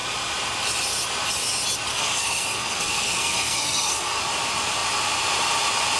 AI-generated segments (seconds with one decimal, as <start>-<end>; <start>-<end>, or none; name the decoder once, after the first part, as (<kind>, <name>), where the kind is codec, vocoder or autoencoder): 1.9-4.2 (codec, SNAC)